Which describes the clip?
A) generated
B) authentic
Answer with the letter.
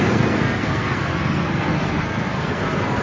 A